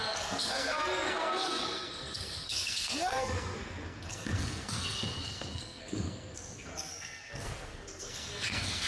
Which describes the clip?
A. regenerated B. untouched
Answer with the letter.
A